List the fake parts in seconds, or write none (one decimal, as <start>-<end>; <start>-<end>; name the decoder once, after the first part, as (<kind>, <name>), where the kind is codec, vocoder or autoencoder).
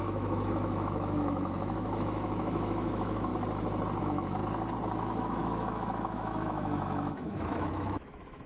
0.0-3.3 (autoencoder, DAC-VAE); 4.0-4.4; 5.0-8.5